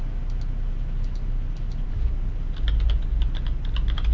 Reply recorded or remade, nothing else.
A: recorded